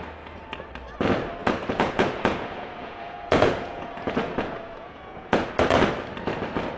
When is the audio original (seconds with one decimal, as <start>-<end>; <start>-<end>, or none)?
0.0-1.4; 5.5-6.8